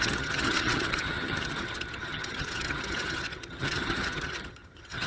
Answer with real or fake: fake